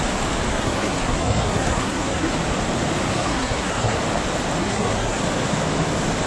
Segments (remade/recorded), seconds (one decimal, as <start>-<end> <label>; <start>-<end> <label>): 0.0-0.5 recorded; 0.5-2.3 remade; 2.3-3.1 recorded; 3.1-4.0 remade; 4.0-4.6 recorded; 4.6-5.2 remade; 5.2-6.3 recorded